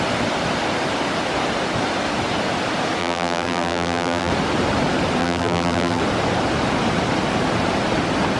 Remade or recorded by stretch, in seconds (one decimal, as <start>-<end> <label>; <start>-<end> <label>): 0.0-3.0 recorded; 3.0-4.3 remade; 4.3-5.2 recorded; 5.2-6.0 remade; 6.0-8.4 recorded